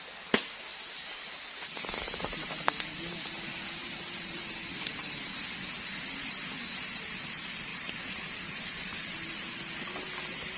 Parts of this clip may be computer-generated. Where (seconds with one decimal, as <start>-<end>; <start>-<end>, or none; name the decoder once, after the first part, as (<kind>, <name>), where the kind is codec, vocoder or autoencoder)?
0.7-2.5 (vocoder, BigVGAN v2); 3.8-4.7; 7.7-9.6